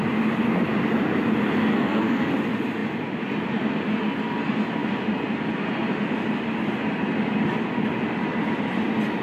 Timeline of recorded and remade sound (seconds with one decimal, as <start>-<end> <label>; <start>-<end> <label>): 0.0-1.7 recorded; 1.7-2.3 remade; 2.3-9.2 recorded